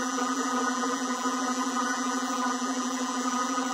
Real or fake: fake